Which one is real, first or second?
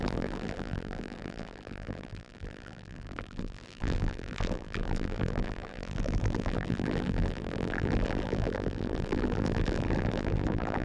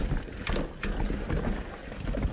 second